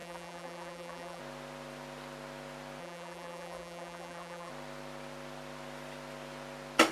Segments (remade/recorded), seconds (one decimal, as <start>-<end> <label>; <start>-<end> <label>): 0.0-1.2 remade; 1.2-2.8 recorded; 2.8-4.5 remade; 4.5-6.9 recorded